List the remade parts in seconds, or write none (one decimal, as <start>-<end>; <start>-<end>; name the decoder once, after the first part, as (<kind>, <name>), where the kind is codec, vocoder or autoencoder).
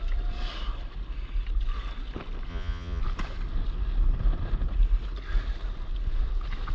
2.5-3.0 (vocoder, Vocos)